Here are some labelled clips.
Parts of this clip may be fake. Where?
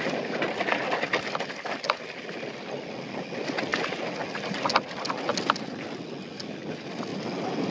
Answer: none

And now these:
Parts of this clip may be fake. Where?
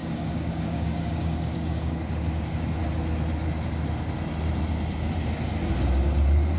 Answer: 0.0-2.8 (codec, DAC)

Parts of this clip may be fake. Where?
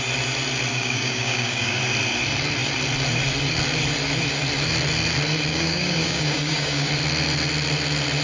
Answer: 0.7-1.8 (codec, DAC); 5.5-6.9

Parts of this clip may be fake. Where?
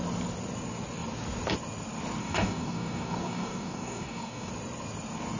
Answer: 2.2-4.5 (codec, DAC)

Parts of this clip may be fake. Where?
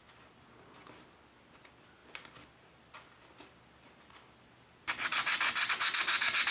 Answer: none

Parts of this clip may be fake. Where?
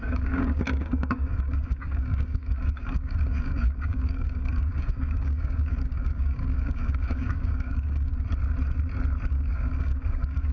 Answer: 0.0-8.1 (codec, DAC); 9.3-10.5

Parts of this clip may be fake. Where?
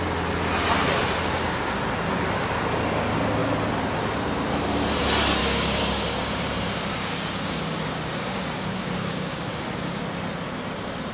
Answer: 5.4-10.0 (codec, DAC)